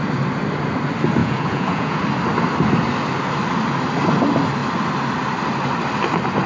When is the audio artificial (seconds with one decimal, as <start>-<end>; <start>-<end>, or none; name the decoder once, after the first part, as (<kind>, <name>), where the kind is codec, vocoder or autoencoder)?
1.2-2.0 (vocoder, Vocos)